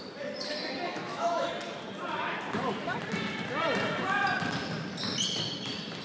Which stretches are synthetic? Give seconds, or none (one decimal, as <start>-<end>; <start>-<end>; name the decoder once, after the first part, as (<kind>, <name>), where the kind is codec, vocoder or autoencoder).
0.9-1.5 (autoencoder, DAC-VAE)